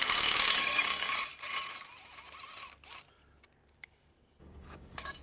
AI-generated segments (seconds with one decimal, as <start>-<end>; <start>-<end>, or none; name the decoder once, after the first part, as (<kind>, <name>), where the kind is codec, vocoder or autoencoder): 0.0-1.3 (codec, DAC); 4.4-5.2